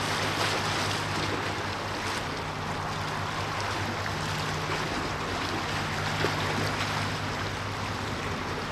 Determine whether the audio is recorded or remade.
recorded